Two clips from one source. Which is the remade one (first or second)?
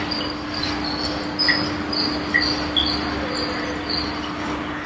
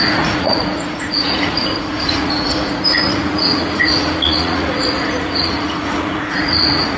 second